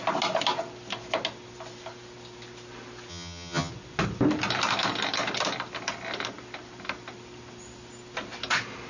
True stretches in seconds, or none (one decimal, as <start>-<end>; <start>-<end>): 0.0-3.1; 3.7-8.9